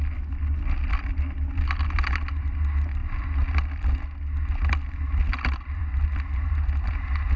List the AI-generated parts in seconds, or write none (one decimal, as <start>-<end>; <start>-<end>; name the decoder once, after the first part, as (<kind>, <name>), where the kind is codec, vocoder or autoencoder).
none

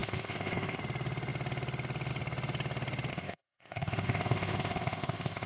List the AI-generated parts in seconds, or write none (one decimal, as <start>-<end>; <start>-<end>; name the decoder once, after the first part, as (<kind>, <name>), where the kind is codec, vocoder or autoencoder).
0.0-0.8 (codec, ZipCodec); 3.1-5.5